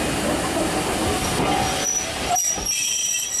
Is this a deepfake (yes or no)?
no